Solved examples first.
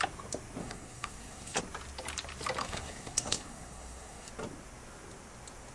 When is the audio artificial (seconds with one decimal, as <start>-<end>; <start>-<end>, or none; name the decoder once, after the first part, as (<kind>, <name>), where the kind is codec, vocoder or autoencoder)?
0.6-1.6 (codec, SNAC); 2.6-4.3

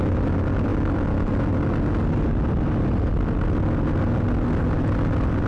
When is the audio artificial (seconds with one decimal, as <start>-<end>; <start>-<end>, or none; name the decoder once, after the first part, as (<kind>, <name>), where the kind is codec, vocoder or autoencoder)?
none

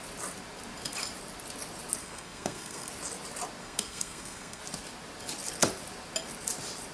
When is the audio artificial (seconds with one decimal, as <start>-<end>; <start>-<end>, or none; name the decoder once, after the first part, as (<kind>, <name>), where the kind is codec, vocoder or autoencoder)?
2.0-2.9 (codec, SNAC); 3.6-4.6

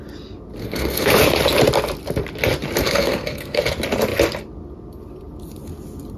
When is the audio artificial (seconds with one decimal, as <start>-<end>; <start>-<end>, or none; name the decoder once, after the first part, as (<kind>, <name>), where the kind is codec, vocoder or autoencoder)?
0.6-1.1 (codec, SNAC); 2.8-3.6

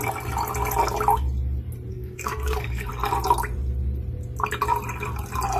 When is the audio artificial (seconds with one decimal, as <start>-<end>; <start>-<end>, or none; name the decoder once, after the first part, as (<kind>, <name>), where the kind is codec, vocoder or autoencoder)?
1.9-2.9 (codec, SNAC)

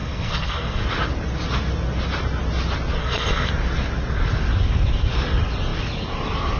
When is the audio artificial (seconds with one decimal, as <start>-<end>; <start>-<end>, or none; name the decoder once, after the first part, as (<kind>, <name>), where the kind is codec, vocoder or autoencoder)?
0.0-0.8 (codec, SNAC); 3.0-3.5

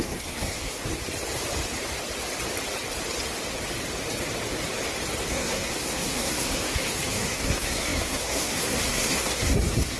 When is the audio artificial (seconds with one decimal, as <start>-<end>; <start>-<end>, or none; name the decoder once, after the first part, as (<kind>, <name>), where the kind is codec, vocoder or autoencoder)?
0.0-0.9 (codec, SNAC); 5.3-10.0

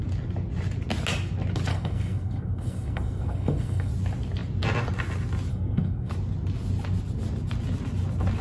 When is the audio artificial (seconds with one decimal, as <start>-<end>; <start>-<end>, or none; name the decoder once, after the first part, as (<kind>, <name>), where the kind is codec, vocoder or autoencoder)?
1.7-3.9 (codec, SNAC); 5.5-6.1